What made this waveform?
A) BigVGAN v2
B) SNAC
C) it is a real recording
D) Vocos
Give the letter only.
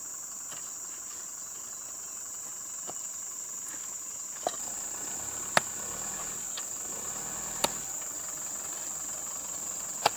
C